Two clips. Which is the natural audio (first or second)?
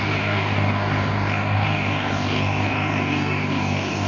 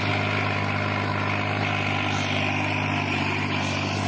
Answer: second